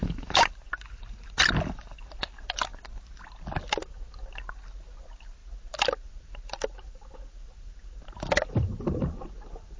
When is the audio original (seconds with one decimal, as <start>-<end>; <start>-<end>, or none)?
0.5-9.8